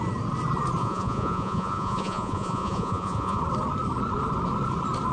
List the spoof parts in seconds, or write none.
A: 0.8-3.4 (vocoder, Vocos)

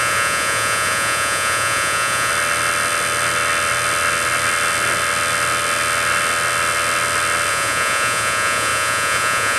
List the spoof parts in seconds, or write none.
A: 0.0-2.3 (vocoder, Vocos); 7.5-9.6

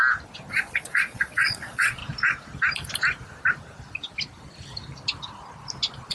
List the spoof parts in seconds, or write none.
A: 0.5-2.0 (vocoder, Vocos)

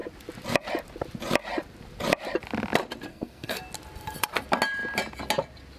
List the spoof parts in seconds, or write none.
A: 3.1-3.6 (codec, SNAC)